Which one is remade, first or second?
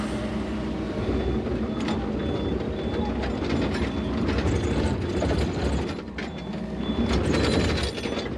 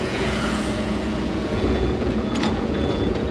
second